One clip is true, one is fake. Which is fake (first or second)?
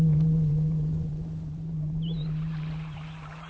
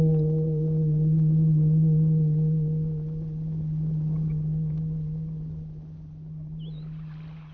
first